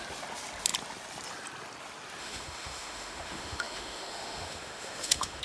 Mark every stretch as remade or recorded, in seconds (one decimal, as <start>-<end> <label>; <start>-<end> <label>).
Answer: 0.0-2.2 recorded; 2.2-5.4 remade